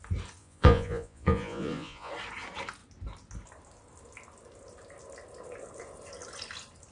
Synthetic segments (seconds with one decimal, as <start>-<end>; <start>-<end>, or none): 0.4-2.1